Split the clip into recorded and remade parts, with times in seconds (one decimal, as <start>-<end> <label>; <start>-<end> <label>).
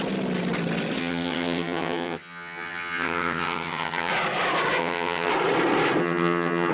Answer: 0.0-1.0 recorded; 1.0-4.1 remade; 4.1-4.8 recorded; 4.8-5.3 remade; 5.3-6.0 recorded; 6.0-6.7 remade